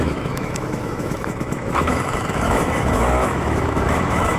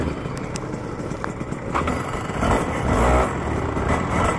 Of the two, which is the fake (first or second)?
first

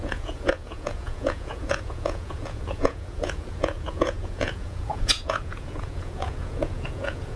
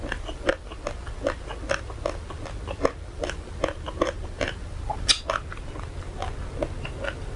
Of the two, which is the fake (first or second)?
first